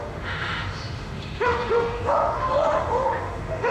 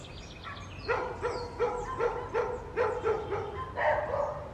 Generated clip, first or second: first